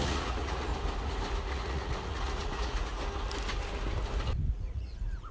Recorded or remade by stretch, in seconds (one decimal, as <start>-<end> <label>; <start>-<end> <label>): 0.0-0.7 remade; 0.7-1.5 recorded; 1.5-2.9 remade; 2.9-4.5 recorded; 4.5-5.3 remade